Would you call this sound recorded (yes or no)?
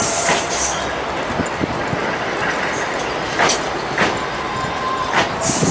yes